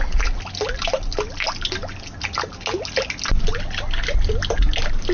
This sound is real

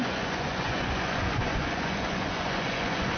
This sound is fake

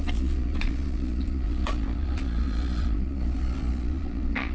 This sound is fake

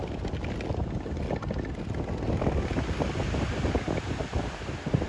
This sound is real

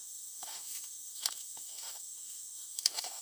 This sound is fake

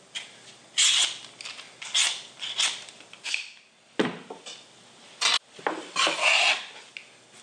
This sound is real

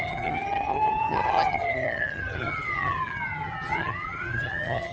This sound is fake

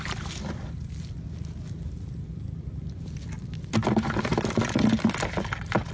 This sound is real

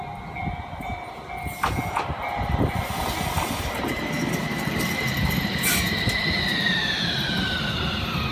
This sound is real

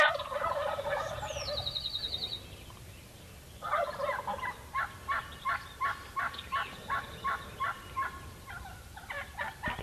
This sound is fake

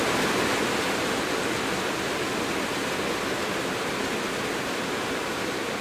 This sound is real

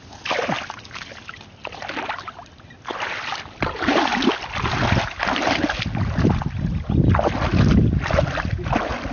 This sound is real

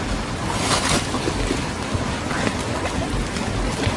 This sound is real